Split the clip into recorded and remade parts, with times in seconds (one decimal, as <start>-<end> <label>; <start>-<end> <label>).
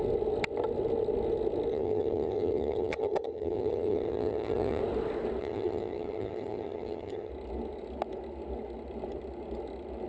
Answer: 0.0-1.7 recorded; 1.7-4.8 remade; 4.8-5.4 recorded; 5.4-7.3 remade; 7.3-10.1 recorded